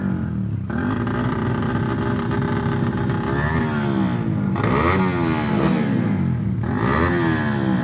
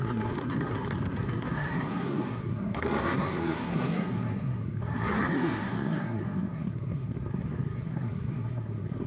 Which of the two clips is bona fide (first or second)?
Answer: first